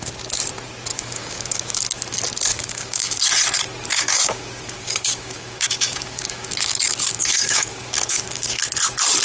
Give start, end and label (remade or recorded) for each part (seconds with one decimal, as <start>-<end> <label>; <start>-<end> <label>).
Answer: 0.0-0.9 recorded; 0.9-1.8 remade; 1.8-2.5 recorded; 2.5-3.2 remade; 3.2-3.9 recorded; 3.9-8.7 remade; 8.7-9.2 recorded

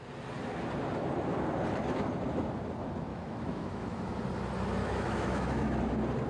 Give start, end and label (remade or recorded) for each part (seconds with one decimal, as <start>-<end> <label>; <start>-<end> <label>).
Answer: 0.0-3.1 recorded; 3.1-4.0 remade; 4.0-4.8 recorded; 4.8-5.8 remade; 5.8-6.3 recorded